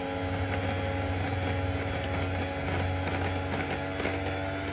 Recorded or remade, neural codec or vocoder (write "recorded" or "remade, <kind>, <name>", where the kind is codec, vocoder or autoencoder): recorded